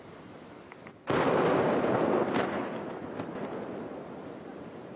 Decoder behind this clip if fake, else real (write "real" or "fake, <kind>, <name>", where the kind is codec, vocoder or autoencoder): real